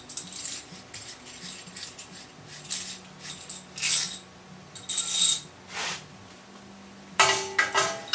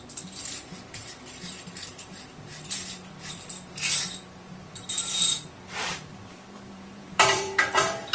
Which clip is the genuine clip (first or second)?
first